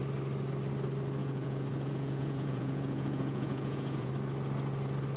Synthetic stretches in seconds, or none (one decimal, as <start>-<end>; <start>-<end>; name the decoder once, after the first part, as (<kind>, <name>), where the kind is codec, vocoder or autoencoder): 1.2-4.1 (vocoder, Vocos)